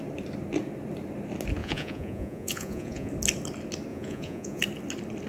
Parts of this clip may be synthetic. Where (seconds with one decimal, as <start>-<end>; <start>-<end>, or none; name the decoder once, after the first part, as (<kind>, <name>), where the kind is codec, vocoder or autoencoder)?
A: 1.6-3.1 (vocoder, Vocos); 3.9-4.6